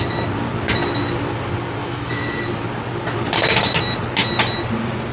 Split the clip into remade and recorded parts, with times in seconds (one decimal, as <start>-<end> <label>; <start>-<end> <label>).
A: 0.0-1.8 recorded; 1.8-2.4 remade; 2.4-5.1 recorded